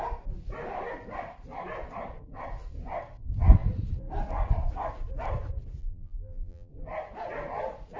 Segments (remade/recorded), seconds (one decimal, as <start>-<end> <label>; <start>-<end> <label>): 0.0-5.8 recorded; 5.8-6.7 remade; 6.7-8.0 recorded